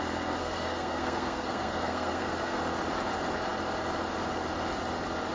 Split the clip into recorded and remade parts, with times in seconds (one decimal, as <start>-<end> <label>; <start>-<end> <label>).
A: 0.0-0.4 recorded; 0.4-2.6 remade; 2.6-5.3 recorded